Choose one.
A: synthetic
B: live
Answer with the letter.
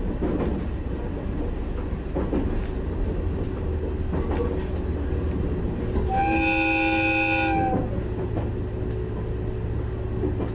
B